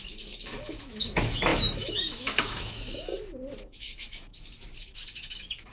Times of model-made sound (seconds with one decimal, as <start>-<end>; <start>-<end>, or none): 0.0-3.1; 3.6-5.7